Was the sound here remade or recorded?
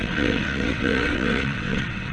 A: remade